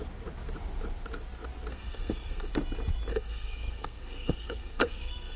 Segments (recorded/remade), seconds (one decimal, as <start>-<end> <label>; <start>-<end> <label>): 0.0-1.7 recorded; 1.7-2.5 remade; 2.5-3.1 recorded; 3.1-5.4 remade